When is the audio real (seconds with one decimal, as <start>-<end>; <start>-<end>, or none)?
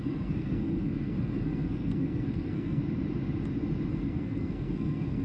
2.8-3.9